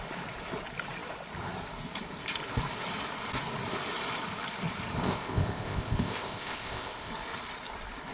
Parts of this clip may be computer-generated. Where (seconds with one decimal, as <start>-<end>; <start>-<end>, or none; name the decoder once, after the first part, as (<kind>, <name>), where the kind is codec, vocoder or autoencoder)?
5.0-7.1 (codec, ZipCodec)